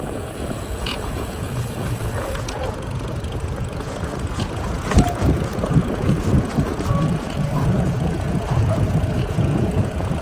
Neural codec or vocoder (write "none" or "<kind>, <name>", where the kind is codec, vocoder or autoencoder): vocoder, Vocos